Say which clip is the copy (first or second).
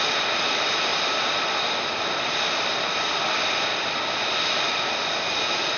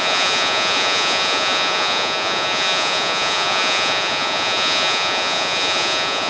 second